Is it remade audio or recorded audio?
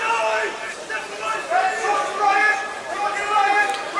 recorded